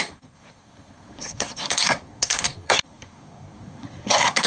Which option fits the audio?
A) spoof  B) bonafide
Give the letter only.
A